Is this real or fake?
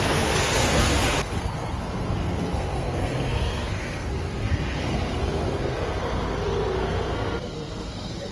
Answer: fake